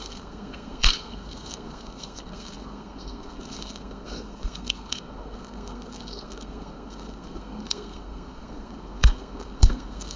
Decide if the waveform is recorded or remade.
remade